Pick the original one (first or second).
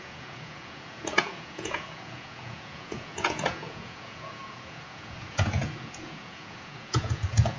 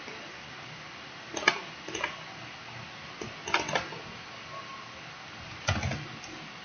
second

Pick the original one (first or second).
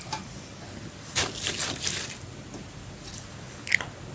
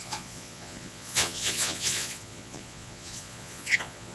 first